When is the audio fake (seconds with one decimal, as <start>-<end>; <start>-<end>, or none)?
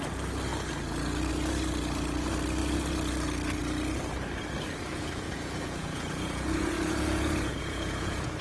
4.9-8.4